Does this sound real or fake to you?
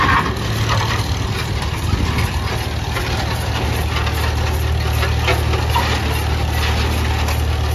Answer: real